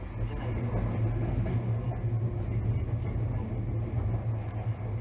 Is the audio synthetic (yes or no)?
no